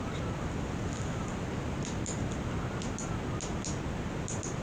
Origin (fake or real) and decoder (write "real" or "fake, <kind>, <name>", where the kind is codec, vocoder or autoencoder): real